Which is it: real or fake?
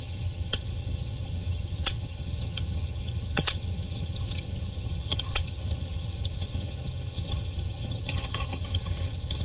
fake